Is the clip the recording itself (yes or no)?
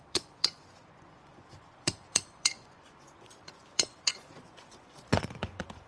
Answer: no